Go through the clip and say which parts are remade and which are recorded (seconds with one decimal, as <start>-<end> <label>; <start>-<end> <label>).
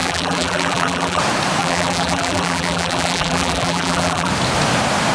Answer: 0.0-1.2 remade; 1.2-1.6 recorded; 1.6-4.3 remade; 4.3-5.1 recorded